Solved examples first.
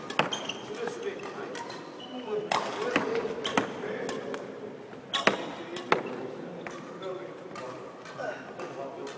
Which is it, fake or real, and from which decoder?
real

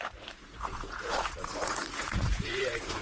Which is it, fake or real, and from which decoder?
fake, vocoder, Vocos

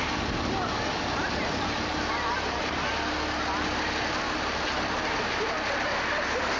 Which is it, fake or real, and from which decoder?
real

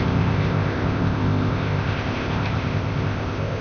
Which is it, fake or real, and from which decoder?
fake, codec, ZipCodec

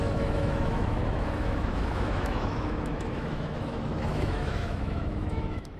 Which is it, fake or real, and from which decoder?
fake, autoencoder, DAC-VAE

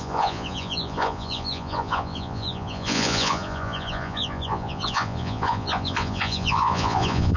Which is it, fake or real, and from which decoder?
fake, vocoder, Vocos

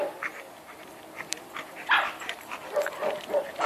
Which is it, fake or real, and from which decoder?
fake, vocoder, BigVGAN v2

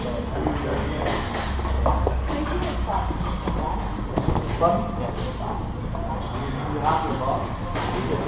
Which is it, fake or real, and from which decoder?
real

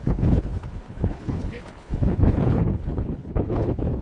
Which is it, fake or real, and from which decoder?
fake, codec, HILCodec